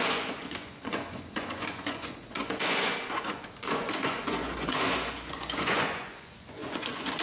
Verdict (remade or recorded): remade